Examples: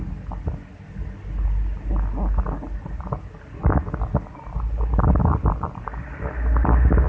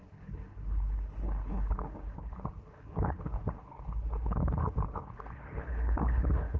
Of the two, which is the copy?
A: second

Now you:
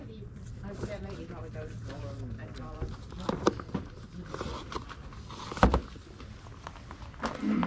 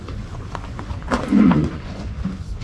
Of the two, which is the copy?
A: second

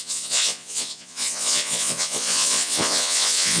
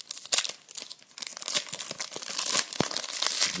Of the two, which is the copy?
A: first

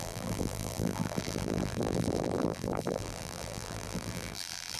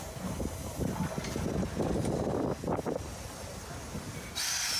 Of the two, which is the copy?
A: first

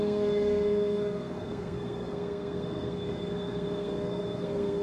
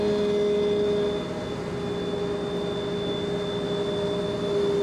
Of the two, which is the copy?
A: first